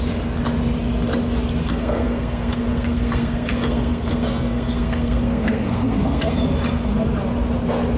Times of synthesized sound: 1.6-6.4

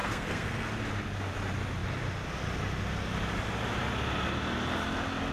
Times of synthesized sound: 0.0-0.7

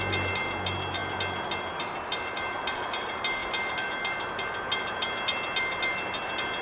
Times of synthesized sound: none

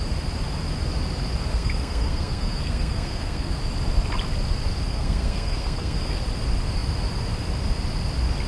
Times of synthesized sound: 1.5-3.6; 4.9-6.2

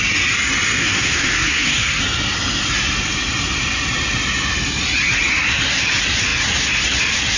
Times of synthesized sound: 0.8-2.0

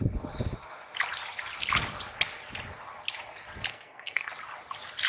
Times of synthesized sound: 3.7-4.3